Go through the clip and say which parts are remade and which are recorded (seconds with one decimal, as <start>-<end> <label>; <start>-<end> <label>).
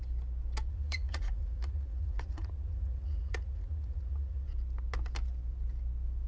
0.0-0.7 recorded; 0.7-4.5 remade; 4.5-6.3 recorded